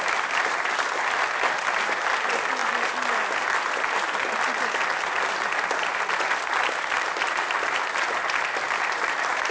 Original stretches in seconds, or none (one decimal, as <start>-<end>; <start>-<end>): 0.0-9.5